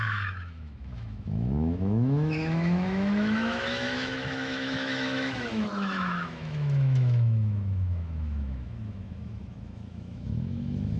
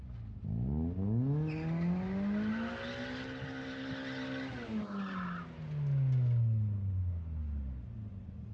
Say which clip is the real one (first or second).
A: second